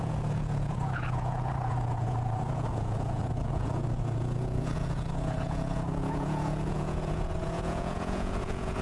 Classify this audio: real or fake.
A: fake